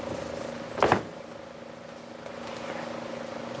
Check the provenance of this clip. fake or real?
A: real